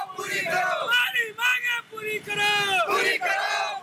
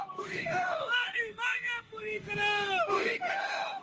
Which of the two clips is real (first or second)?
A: first